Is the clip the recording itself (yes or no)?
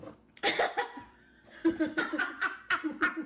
no